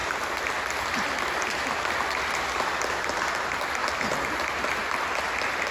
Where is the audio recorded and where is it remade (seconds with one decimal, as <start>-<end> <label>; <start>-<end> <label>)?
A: 0.0-5.7 recorded